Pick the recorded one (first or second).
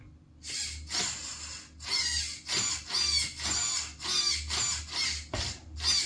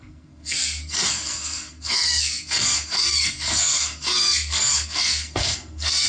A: first